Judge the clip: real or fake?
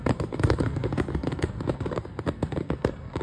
fake